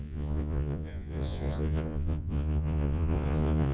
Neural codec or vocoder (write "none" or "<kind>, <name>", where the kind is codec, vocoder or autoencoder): vocoder, Vocos